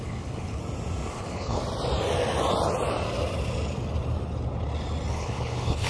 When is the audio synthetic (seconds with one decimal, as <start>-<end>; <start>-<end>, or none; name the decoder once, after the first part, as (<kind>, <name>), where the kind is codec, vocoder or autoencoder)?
0.0-0.6 (codec, HILCodec); 1.1-1.6; 5.1-5.9

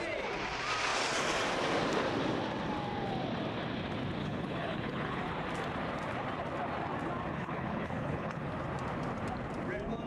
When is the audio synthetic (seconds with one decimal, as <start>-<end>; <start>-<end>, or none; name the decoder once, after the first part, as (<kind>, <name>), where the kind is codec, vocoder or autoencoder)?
4.2-5.2 (codec, HILCodec); 7.3-8.5

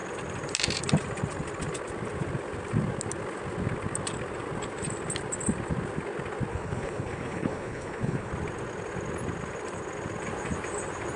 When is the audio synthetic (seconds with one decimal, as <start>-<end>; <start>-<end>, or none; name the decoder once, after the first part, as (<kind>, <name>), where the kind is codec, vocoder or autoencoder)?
6.5-8.3 (codec, HILCodec)

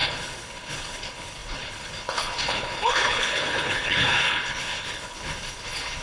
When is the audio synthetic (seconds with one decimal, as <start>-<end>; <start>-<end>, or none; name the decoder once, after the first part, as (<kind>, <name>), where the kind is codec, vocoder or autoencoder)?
0.0-6.0 (codec, HILCodec)

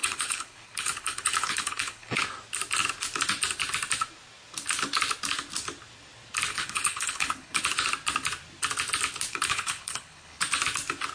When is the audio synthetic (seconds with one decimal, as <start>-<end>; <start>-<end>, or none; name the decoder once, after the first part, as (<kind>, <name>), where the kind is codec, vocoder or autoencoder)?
0.0-2.2 (codec, HILCodec); 6.5-7.6; 9.3-10.4

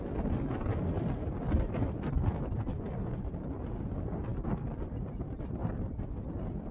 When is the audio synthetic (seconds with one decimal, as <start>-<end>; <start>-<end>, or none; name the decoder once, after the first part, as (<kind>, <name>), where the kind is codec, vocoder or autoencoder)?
none

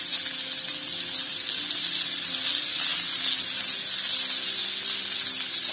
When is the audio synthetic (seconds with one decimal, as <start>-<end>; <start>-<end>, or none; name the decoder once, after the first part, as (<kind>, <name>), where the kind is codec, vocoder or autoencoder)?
none

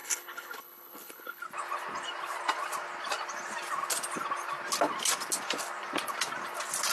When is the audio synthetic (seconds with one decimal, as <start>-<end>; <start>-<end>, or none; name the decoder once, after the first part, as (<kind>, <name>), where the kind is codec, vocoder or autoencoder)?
0.0-1.4 (codec, HILCodec)